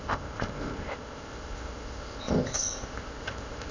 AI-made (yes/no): yes